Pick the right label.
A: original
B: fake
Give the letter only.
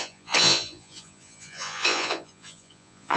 B